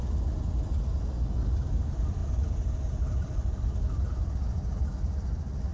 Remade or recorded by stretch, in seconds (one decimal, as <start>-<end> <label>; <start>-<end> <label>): 0.0-5.7 recorded